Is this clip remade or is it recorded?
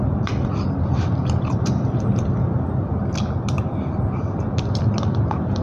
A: remade